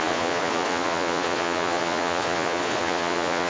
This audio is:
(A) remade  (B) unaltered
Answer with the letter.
A